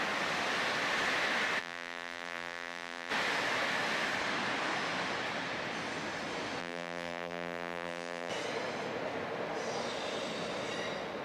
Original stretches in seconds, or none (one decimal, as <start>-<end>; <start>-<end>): 0.0-1.6; 3.1-6.6; 8.3-11.2